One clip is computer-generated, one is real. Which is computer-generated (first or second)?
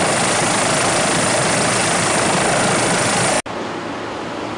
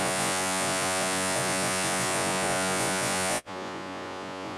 second